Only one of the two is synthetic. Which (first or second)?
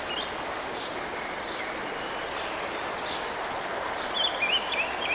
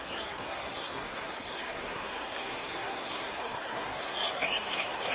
second